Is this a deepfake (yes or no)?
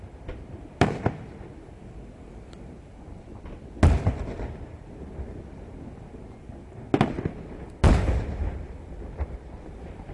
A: no